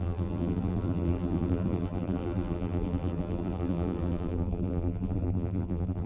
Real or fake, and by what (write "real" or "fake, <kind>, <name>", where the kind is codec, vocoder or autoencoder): fake, vocoder, BigVGAN v2